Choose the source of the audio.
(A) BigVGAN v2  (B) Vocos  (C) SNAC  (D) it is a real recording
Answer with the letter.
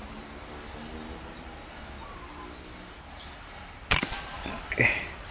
D